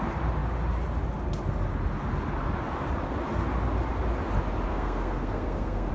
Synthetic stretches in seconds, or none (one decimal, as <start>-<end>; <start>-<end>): 4.7-5.9